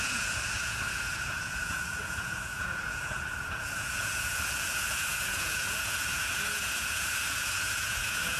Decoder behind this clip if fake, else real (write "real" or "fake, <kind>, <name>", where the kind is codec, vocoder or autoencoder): fake, vocoder, Vocos